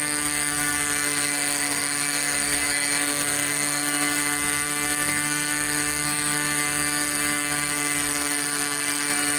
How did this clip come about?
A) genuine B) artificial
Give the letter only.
B